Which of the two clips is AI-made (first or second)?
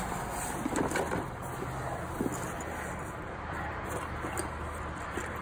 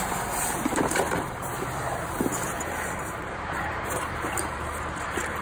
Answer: second